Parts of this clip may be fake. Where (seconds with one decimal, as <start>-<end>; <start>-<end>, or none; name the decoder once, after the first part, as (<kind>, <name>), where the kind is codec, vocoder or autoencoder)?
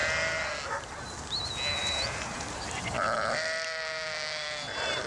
1.8-5.1 (vocoder, BigVGAN v2)